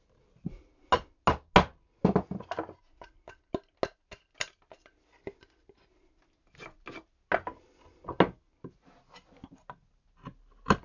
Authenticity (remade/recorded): recorded